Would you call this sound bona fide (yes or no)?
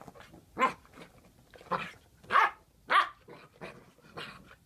yes